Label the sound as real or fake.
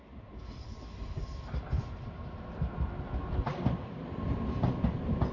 real